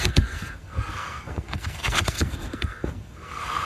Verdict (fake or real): fake